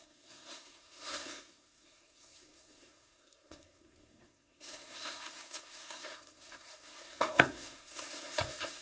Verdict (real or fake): fake